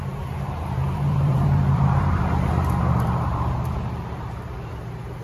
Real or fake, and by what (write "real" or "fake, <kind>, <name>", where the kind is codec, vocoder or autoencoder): fake, vocoder, BigVGAN v2